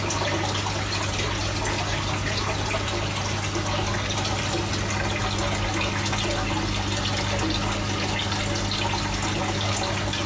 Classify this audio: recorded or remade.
recorded